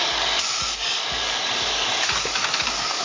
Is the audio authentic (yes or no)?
no